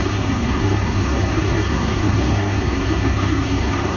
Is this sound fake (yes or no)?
yes